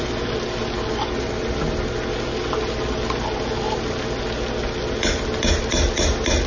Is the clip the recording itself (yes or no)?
yes